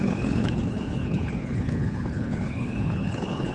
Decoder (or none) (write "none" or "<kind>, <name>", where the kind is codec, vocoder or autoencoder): codec, HILCodec